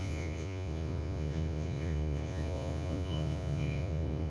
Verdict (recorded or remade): remade